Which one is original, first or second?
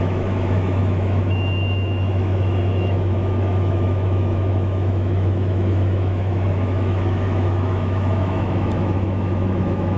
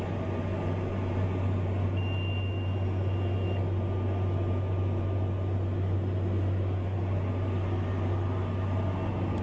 second